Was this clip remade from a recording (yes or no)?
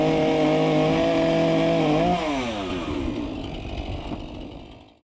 no